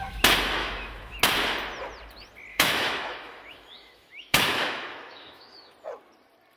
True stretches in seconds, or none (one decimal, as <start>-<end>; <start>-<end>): 0.0-0.6; 1.2-2.5; 5.7-6.6